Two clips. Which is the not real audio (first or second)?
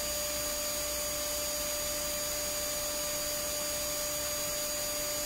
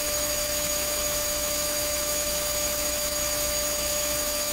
second